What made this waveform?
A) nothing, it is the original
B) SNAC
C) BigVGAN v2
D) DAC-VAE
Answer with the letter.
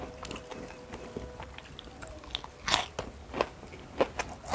A